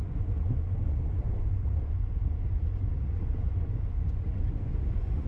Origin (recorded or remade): remade